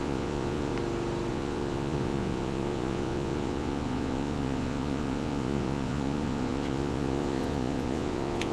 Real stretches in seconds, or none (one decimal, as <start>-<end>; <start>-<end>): 0.7-1.3